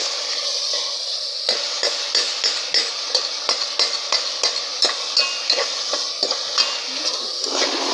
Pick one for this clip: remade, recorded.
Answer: recorded